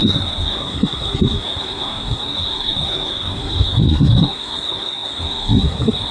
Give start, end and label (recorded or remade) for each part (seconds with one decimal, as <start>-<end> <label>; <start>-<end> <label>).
0.0-6.1 remade